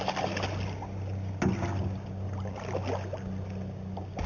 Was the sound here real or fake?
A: real